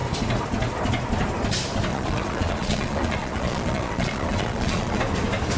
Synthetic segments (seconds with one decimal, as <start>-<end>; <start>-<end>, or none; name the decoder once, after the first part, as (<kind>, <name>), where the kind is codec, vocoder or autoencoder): 1.9-5.0 (vocoder, Vocos)